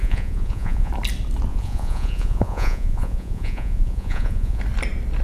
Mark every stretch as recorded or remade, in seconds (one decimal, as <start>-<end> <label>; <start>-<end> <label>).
0.0-0.9 remade; 0.9-1.5 recorded; 1.5-4.6 remade; 4.6-5.2 recorded